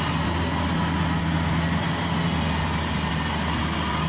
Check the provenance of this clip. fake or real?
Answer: real